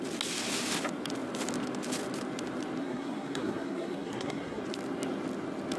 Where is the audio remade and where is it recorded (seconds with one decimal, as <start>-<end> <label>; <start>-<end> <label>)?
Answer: 0.0-2.8 recorded; 2.8-4.6 remade; 4.6-5.8 recorded